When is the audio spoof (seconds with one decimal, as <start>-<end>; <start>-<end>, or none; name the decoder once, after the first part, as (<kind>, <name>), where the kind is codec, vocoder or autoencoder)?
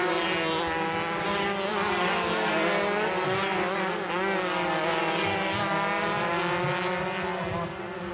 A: none